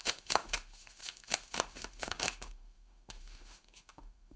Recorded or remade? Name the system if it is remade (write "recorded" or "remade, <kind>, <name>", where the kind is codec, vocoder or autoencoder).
remade, autoencoder, DAC-VAE